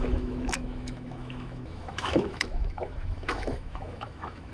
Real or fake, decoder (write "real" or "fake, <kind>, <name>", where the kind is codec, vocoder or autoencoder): fake, autoencoder, DAC-VAE